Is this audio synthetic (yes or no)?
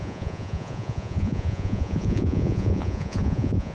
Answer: yes